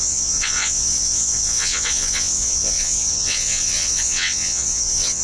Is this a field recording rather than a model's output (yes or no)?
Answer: no